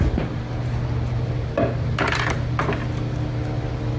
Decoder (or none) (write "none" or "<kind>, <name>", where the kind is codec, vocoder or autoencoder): none